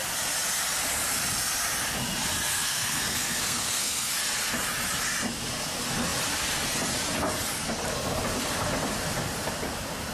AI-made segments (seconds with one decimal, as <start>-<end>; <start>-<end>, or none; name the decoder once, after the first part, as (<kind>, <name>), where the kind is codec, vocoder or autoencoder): 2.5-4.1 (codec, SNAC)